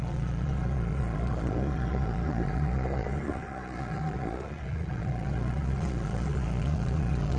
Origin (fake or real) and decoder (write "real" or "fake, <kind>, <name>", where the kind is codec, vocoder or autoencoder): fake, vocoder, Vocos